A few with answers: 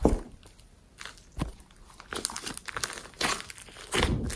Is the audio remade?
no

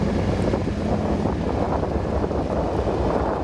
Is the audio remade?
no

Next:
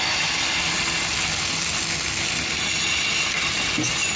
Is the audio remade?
no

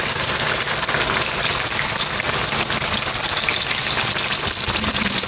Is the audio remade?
no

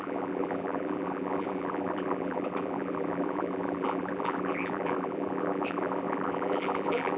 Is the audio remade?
yes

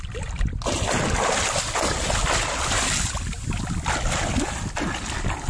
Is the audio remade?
no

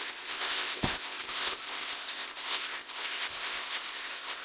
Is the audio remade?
yes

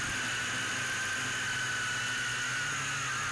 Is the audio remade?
no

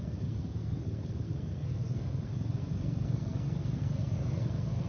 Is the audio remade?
yes